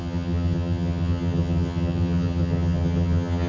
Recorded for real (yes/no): no